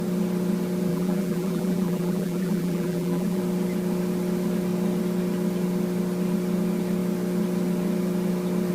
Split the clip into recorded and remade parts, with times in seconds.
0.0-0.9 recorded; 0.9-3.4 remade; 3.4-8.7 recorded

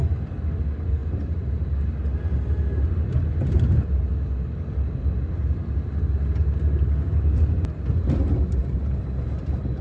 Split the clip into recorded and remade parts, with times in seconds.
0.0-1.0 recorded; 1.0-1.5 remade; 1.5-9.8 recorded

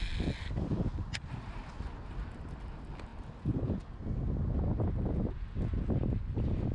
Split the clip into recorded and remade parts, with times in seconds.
0.0-6.7 recorded

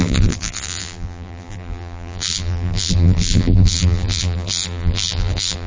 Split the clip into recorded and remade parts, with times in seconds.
0.0-5.7 remade

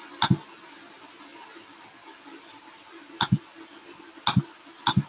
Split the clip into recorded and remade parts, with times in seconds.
0.0-5.1 recorded

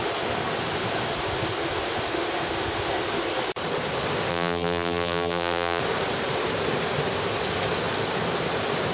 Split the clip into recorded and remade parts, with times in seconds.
0.0-4.3 recorded; 4.3-5.8 remade; 5.8-8.9 recorded

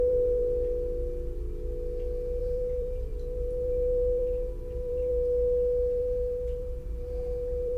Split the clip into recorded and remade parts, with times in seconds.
0.0-0.4 remade; 0.4-2.4 recorded; 2.4-5.1 remade; 5.1-6.0 recorded; 6.0-7.8 remade

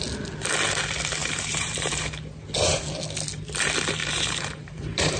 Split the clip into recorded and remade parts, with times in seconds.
0.0-1.2 recorded; 1.2-2.1 remade; 2.1-4.0 recorded; 4.0-5.2 remade